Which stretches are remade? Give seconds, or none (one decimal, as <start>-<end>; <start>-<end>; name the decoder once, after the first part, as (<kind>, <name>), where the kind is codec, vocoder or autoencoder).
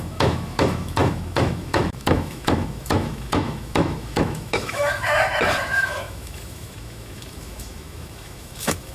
0.0-8.9 (autoencoder, DAC-VAE)